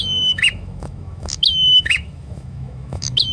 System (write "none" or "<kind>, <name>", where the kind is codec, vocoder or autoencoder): autoencoder, DAC-VAE